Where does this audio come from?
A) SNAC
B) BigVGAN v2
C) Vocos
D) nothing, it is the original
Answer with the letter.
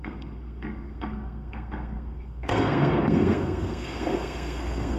A